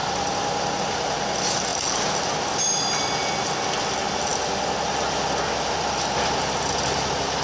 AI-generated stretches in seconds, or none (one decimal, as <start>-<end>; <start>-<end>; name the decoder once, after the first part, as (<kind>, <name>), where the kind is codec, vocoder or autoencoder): none